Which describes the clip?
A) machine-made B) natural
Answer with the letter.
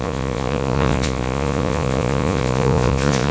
A